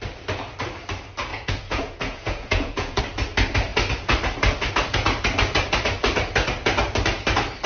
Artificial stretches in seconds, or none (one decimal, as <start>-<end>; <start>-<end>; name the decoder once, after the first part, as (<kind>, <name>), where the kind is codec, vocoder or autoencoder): 1.3-3.0 (vocoder, Vocos)